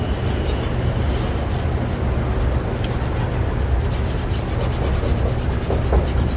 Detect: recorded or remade recorded